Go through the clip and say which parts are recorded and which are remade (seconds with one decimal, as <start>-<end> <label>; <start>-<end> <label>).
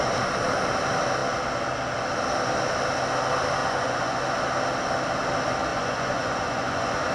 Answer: 0.0-3.6 recorded; 3.6-4.2 remade; 4.2-5.7 recorded; 5.7-7.1 remade